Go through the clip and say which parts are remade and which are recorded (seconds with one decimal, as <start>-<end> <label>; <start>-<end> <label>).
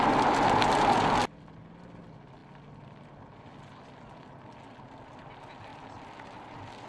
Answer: 0.0-2.4 recorded; 2.4-3.1 remade; 3.1-5.7 recorded; 5.7-6.9 remade